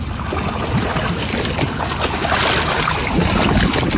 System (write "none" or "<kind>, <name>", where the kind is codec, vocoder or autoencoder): none